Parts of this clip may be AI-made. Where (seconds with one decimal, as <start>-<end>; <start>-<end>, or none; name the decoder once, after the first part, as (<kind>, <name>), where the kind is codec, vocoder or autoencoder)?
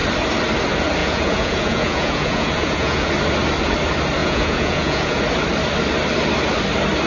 1.0-3.1 (vocoder, Vocos); 4.2-5.2